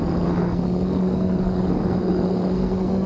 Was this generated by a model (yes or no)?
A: yes